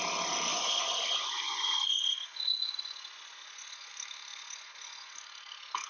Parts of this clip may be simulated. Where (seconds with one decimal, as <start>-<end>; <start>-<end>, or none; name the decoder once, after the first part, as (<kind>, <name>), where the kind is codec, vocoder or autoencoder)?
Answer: 0.5-3.9 (vocoder, Vocos); 4.3-5.1